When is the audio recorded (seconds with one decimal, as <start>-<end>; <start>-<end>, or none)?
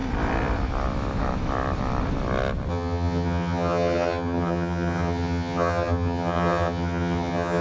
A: 0.0-2.7